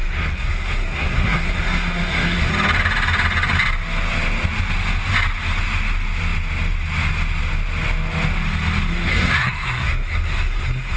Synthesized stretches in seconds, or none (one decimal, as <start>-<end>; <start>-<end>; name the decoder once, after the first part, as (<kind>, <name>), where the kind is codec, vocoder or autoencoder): 0.0-2.5 (codec, SNAC); 8.9-11.0